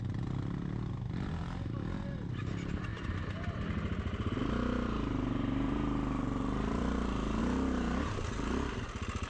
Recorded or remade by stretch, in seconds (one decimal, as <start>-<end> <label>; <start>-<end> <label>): 0.0-2.9 recorded; 2.9-7.4 remade; 7.4-9.3 recorded